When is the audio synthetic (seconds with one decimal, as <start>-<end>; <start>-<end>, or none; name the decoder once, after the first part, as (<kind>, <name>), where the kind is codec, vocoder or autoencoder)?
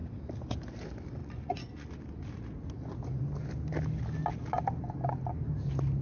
1.2-1.9 (vocoder, Vocos)